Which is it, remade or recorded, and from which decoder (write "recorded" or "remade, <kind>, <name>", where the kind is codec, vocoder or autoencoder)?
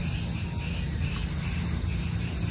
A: recorded